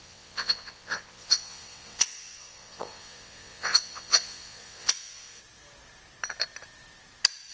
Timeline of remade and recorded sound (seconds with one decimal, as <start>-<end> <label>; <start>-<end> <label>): 0.0-5.4 remade; 5.4-7.5 recorded